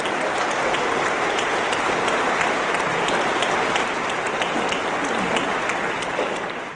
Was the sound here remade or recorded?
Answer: recorded